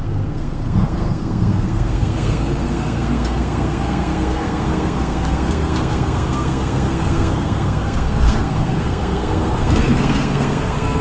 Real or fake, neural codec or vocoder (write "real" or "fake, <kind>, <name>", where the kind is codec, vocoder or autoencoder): fake, codec, SNAC